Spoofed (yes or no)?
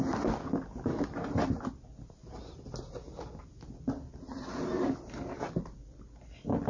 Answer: no